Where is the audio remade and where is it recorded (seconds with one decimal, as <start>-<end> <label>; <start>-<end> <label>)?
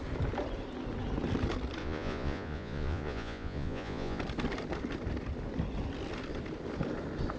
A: 0.0-1.8 recorded; 1.8-4.2 remade; 4.2-7.4 recorded